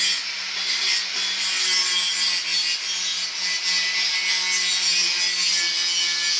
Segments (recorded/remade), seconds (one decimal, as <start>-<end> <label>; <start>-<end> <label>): 0.0-6.4 recorded